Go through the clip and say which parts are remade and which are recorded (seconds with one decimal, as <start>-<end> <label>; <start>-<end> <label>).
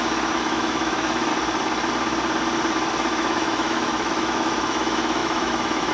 0.0-1.3 remade; 1.3-3.1 recorded; 3.1-5.9 remade